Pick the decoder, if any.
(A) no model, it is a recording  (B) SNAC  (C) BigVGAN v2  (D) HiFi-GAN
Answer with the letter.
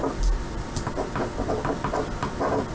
A